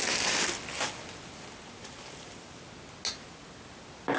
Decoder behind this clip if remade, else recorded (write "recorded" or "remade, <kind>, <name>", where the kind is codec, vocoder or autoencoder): recorded